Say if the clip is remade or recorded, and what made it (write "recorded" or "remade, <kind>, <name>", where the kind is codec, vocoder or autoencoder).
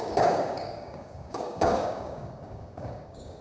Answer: remade, codec, DAC